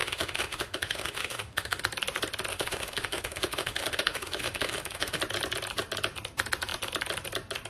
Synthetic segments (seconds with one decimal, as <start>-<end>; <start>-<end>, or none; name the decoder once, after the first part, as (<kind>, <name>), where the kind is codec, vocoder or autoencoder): 0.0-1.8 (autoencoder, DAC-VAE); 2.5-5.2